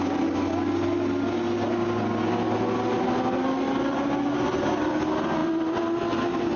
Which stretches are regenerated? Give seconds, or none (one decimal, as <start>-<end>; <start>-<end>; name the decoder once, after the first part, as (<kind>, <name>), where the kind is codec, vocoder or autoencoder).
5.4-6.0 (vocoder, BigVGAN v2)